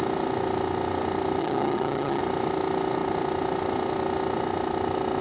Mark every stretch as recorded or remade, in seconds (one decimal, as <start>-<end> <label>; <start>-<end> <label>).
0.0-1.4 recorded; 1.4-2.2 remade; 2.2-5.2 recorded